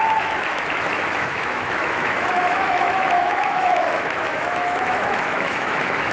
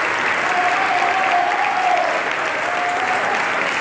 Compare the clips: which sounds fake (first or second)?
first